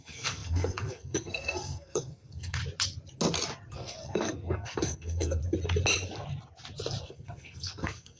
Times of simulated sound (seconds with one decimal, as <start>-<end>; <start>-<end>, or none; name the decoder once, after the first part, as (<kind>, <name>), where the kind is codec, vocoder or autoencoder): 0.0-2.6 (codec, SNAC); 3.7-5.4; 7.0-8.2